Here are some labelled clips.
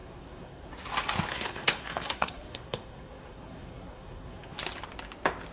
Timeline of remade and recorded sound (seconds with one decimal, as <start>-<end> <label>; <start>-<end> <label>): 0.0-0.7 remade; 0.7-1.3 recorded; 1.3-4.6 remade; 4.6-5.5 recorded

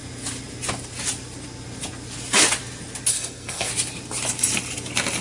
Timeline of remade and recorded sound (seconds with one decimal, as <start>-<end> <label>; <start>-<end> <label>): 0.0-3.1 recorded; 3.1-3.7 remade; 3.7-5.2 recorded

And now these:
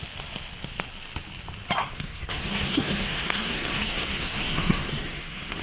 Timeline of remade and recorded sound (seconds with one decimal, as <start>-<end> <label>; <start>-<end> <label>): 0.0-1.8 recorded; 1.8-5.6 remade